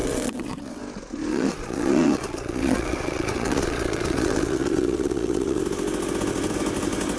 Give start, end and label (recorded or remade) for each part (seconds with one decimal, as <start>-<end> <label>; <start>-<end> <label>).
0.0-0.8 remade; 0.8-1.3 recorded; 1.3-5.6 remade; 5.6-7.2 recorded